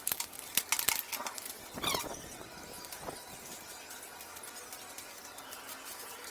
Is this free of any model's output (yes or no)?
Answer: yes